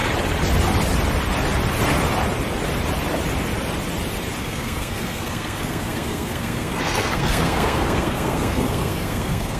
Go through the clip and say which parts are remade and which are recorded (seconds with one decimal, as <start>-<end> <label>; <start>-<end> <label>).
0.0-4.4 recorded; 4.4-9.6 remade